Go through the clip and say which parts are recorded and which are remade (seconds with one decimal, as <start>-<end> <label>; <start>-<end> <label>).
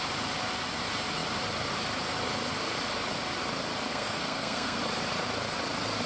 0.0-3.9 recorded; 3.9-4.8 remade; 4.8-6.1 recorded